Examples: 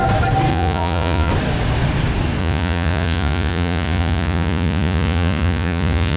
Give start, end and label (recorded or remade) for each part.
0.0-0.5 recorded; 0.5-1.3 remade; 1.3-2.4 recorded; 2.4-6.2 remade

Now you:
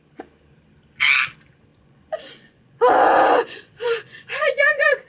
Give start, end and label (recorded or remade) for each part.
0.0-1.7 recorded; 1.7-5.1 remade